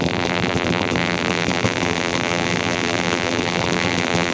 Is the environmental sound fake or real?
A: fake